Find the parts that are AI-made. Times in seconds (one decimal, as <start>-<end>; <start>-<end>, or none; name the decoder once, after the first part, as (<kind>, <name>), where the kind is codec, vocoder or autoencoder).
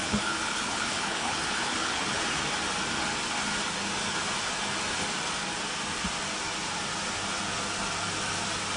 0.0-2.2 (codec, HILCodec)